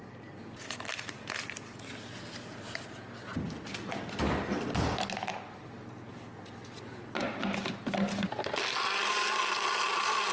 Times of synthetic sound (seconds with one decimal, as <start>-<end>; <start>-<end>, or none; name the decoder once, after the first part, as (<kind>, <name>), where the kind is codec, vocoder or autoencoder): none